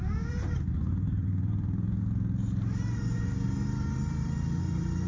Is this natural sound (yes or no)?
no